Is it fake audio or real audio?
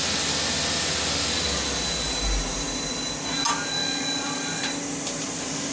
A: real